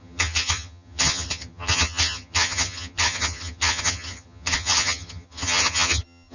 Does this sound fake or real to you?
fake